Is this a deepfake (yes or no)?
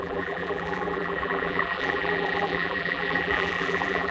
yes